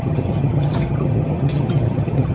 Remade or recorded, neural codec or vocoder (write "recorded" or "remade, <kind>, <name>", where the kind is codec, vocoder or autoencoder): remade, vocoder, HiFi-GAN